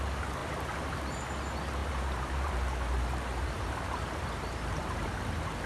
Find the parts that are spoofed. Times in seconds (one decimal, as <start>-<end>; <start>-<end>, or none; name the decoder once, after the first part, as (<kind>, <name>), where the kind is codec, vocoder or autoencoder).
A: 0.4-1.0 (vocoder, BigVGAN v2); 1.8-5.2

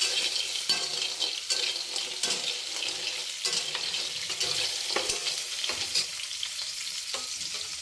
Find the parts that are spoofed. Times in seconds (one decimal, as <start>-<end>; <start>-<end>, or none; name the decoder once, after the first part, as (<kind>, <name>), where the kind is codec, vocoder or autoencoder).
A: 5.2-6.8 (vocoder, BigVGAN v2)

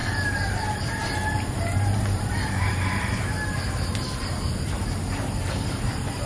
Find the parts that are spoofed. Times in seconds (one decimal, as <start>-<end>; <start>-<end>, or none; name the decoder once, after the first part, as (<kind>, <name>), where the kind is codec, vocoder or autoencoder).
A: 0.0-6.3 (vocoder, BigVGAN v2)

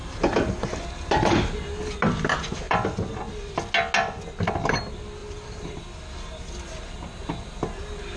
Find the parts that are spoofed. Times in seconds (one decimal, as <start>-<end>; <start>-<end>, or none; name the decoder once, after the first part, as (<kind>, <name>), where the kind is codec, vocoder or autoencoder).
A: 5.2-6.2 (vocoder, BigVGAN v2)

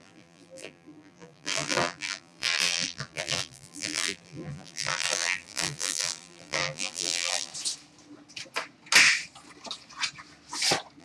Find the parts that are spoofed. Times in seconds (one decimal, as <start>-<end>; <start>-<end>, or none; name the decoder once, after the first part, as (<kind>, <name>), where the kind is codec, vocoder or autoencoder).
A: 0.0-7.5 (vocoder, BigVGAN v2)